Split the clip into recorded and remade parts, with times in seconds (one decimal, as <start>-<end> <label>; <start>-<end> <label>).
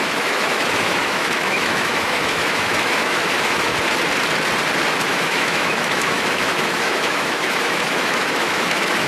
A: 0.0-3.7 remade; 3.7-5.0 recorded; 5.0-9.1 remade